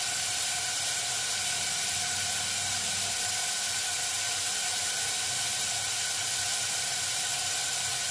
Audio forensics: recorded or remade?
recorded